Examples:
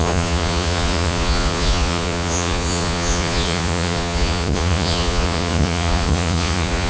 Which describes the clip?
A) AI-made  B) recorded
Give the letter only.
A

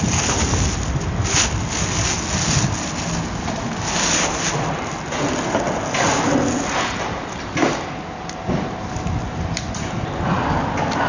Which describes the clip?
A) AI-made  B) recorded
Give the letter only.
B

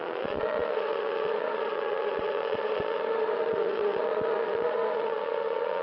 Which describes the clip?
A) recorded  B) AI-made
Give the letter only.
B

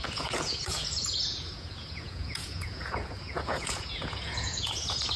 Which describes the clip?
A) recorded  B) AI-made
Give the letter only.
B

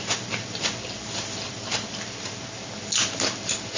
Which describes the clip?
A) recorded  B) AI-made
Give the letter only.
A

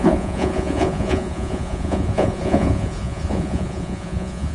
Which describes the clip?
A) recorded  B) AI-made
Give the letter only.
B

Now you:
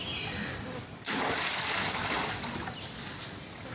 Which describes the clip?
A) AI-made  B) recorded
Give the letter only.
B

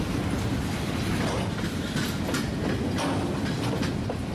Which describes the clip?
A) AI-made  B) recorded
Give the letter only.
B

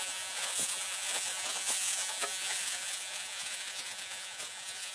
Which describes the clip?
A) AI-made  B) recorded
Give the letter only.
A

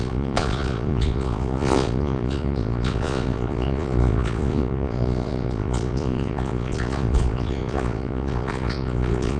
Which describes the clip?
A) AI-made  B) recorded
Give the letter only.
A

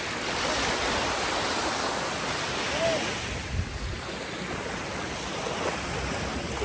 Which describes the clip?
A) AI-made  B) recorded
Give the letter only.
B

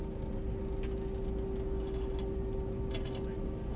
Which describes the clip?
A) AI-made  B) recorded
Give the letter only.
B